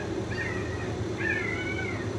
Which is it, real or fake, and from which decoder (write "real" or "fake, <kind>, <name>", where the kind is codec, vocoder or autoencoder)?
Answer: real